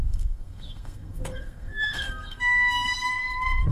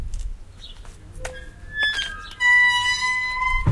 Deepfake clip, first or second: first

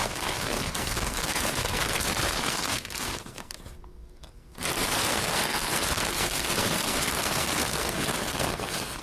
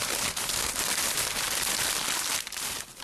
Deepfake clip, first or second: first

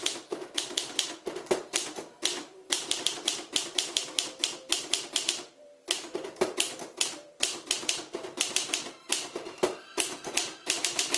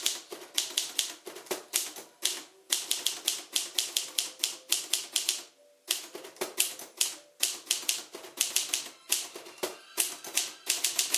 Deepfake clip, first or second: first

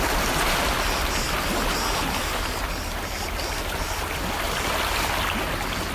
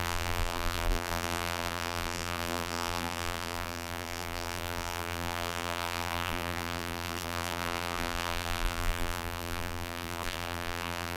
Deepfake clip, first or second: second